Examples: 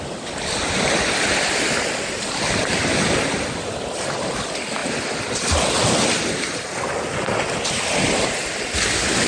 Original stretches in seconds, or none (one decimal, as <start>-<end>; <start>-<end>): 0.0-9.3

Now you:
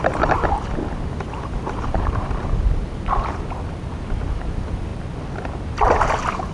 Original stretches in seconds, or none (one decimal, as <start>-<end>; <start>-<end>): 0.0-1.6; 2.4-6.5

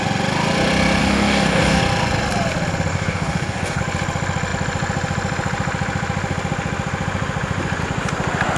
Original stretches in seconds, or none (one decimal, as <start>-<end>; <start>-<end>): 0.0-1.0; 1.8-2.9; 3.8-8.6

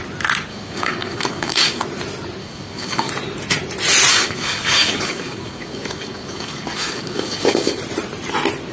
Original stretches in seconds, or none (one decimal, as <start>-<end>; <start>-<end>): 0.0-0.5; 1.8-2.4; 3.1-4.1; 7.8-8.7

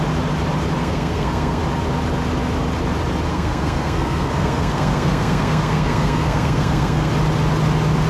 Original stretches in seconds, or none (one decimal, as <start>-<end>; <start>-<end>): 0.0-0.8; 1.6-3.3; 7.1-8.1

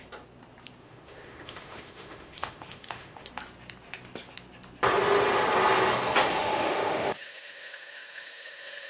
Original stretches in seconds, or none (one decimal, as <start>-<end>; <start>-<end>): 0.0-0.8; 3.3-6.4